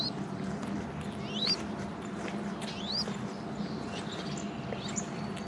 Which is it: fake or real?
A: real